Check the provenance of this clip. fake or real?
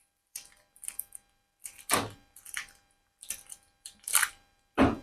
fake